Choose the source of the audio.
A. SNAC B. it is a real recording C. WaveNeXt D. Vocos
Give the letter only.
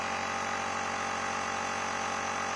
B